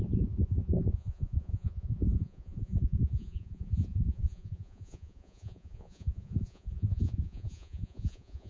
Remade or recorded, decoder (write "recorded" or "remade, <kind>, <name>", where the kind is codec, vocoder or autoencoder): remade, vocoder, Vocos